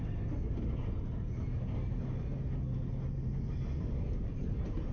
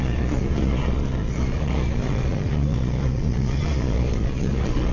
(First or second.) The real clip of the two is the first